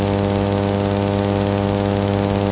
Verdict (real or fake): real